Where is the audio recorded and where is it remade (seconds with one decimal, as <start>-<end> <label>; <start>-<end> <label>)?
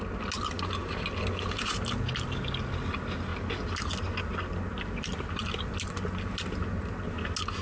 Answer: 0.0-7.6 recorded